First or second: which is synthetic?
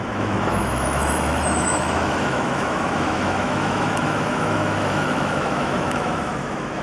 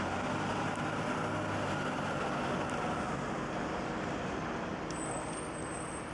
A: first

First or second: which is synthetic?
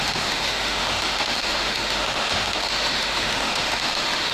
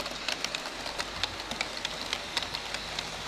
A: first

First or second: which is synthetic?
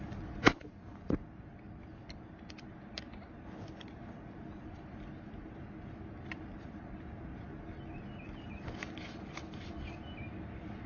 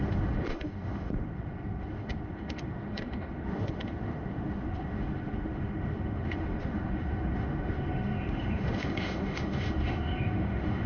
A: second